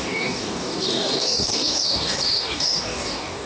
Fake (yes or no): yes